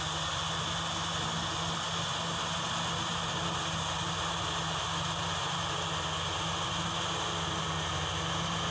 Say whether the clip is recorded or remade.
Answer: recorded